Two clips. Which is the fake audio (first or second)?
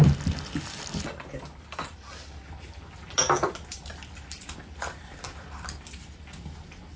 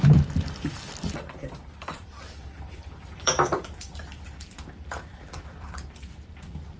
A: second